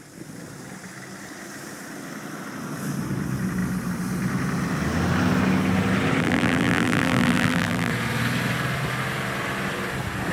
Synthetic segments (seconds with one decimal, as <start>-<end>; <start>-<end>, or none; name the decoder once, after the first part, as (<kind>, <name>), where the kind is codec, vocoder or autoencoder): 6.2-7.9 (vocoder, BigVGAN v2)